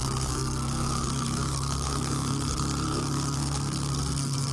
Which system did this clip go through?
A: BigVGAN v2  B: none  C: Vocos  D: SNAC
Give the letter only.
D